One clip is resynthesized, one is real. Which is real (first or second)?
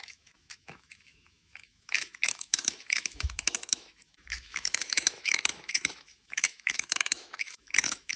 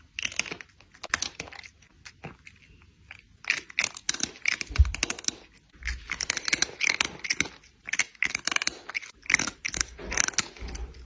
second